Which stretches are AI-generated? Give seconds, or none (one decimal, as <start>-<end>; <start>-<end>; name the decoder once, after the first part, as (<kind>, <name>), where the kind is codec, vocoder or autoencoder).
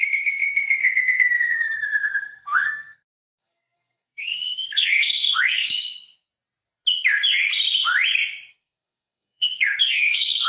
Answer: 0.0-6.3 (codec, SNAC); 8.5-10.5